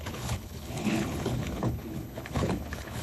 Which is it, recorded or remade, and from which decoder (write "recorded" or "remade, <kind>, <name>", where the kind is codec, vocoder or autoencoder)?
remade, codec, HILCodec